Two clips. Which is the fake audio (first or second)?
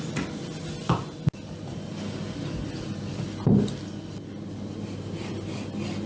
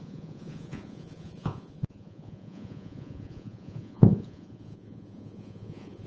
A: second